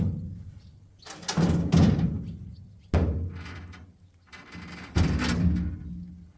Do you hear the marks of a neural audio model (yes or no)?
no